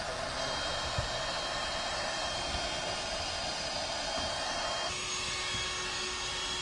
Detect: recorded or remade recorded